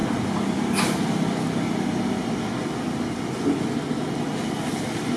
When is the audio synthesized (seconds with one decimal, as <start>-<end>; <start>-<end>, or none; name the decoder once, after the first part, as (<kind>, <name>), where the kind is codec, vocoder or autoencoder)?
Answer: none